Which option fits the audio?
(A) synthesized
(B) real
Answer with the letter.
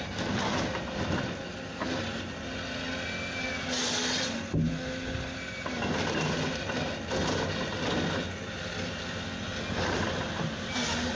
B